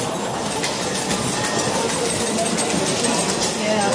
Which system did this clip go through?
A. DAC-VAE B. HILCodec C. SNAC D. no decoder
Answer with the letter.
D